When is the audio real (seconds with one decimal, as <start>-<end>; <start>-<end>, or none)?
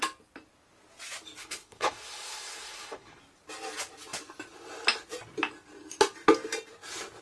0.0-1.4; 3.2-7.2